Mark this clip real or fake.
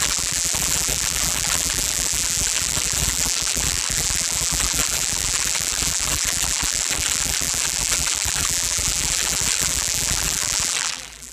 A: fake